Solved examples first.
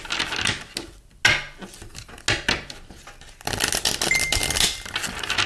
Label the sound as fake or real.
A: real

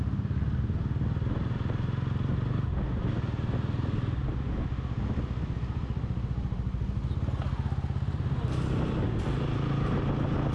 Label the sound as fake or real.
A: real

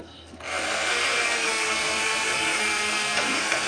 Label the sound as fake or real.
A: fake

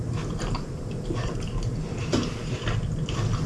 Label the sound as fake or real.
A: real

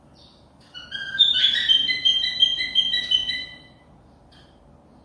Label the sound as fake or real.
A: real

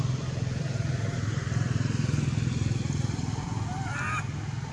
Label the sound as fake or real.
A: real